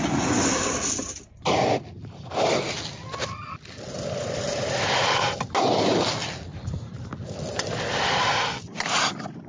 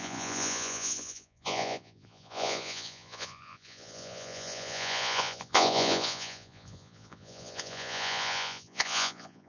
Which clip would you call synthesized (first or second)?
second